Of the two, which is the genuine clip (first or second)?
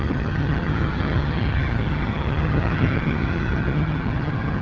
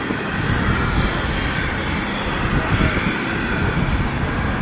second